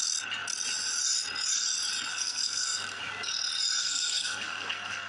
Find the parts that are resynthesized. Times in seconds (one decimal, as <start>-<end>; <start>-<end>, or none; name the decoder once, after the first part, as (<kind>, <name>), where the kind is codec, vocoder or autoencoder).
2.1-3.0 (codec, SNAC); 3.8-5.1

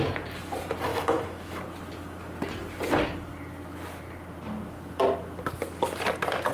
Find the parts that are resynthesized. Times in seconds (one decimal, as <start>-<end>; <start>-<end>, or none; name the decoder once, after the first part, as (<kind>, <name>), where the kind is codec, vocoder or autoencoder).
0.9-1.6 (autoencoder, DAC-VAE)

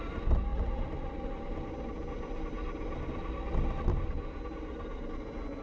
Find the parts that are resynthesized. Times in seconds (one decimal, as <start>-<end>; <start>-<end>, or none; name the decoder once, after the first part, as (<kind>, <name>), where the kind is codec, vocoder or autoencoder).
none

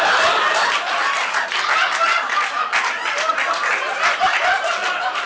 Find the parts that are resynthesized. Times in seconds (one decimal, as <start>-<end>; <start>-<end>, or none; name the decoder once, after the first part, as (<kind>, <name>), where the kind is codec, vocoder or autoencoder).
none

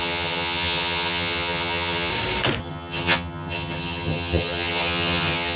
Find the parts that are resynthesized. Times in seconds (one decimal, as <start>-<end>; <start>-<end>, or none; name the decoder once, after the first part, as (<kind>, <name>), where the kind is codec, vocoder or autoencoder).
0.0-2.1 (vocoder, HiFi-GAN); 2.6-5.6

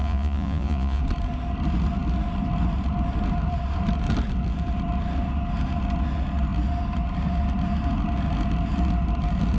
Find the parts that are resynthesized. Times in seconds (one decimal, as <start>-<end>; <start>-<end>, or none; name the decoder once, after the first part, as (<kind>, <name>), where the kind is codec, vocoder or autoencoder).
0.0-1.0 (vocoder, Vocos)

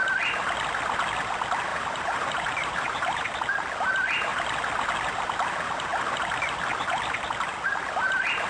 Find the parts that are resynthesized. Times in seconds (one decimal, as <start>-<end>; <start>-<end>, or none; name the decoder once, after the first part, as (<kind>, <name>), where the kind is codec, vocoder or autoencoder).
1.7-3.2 (vocoder, BigVGAN v2)